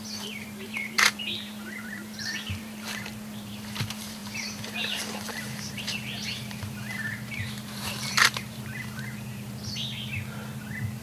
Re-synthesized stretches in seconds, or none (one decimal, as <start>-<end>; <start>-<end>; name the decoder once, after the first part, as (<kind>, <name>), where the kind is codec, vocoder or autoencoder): 0.0-9.8 (vocoder, BigVGAN v2)